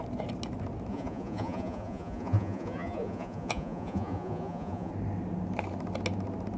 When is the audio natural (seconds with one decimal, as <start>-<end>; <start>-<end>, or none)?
0.0-0.9; 4.9-6.6